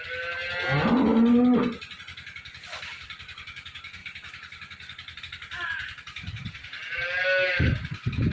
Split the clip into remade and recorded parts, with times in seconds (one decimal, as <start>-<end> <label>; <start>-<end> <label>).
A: 0.0-4.0 recorded; 4.0-5.2 remade; 5.2-8.3 recorded